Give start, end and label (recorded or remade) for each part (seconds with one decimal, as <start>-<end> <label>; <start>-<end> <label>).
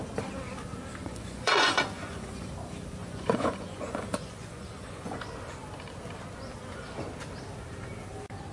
0.0-1.0 recorded; 1.0-2.5 remade; 2.5-3.0 recorded; 3.0-5.2 remade; 5.2-8.5 recorded